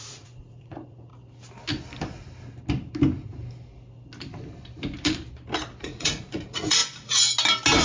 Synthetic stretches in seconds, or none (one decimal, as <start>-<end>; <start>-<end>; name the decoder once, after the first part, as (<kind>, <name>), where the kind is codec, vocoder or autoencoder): 0.0-1.1 (vocoder, Vocos); 5.8-6.8